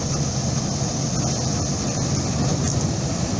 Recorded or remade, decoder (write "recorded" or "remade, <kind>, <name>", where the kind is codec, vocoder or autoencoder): recorded